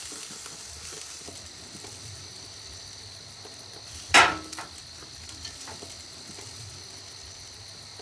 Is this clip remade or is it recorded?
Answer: recorded